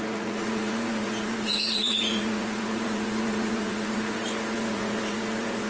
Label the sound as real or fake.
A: fake